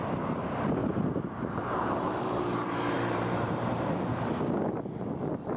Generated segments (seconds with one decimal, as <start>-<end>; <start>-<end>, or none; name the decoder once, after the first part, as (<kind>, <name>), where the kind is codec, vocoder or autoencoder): 0.8-4.2 (vocoder, BigVGAN v2)